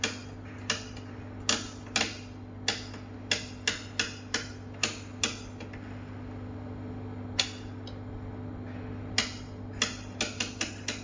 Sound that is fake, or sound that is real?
real